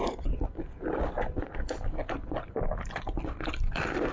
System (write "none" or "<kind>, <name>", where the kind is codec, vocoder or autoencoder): none